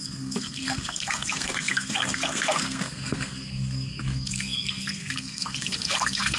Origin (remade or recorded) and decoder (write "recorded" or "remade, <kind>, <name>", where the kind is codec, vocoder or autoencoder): remade, codec, SNAC